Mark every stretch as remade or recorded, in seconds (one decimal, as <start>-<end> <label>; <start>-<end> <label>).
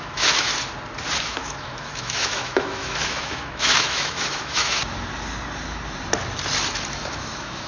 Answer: 0.0-0.5 remade; 0.5-1.2 recorded; 1.2-4.8 remade; 4.8-7.1 recorded; 7.1-7.7 remade